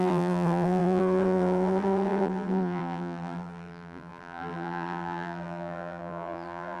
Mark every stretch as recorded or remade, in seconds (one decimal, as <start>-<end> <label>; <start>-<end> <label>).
0.0-6.8 remade